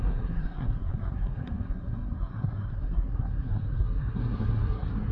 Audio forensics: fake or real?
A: fake